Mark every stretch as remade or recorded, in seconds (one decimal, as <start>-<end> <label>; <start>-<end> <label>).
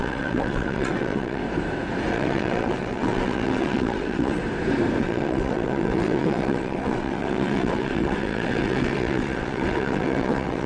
0.0-1.4 remade; 1.4-2.1 recorded; 2.1-4.4 remade; 4.4-5.0 recorded; 5.0-10.7 remade